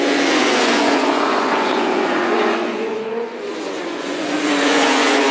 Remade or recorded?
remade